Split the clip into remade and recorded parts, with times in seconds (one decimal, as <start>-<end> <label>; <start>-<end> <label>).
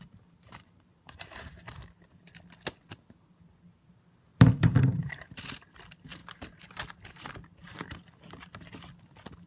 0.0-1.7 remade; 1.7-4.3 recorded; 4.3-5.1 remade; 5.1-9.5 recorded